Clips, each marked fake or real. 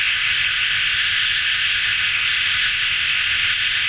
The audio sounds fake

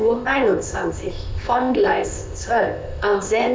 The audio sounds fake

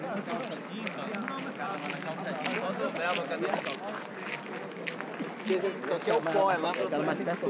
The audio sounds real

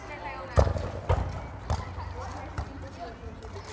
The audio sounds real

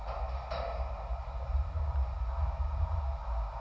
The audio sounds real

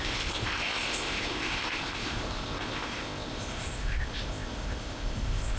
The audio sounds fake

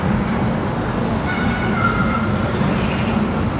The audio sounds real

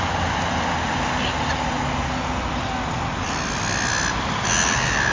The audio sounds real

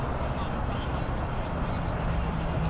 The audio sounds real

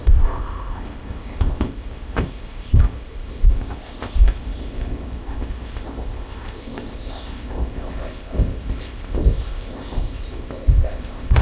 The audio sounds fake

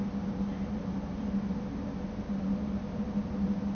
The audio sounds real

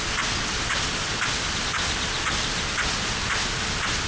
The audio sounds real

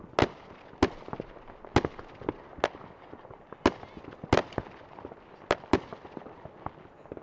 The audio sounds real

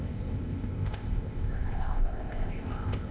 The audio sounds fake